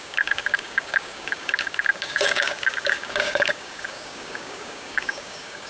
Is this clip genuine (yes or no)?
no